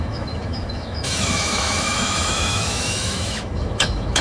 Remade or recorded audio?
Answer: remade